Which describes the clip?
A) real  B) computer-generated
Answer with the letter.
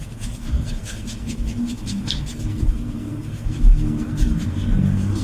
B